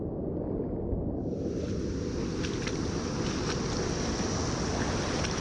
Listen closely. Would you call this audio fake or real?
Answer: real